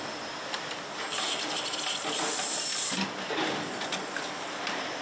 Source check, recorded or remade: recorded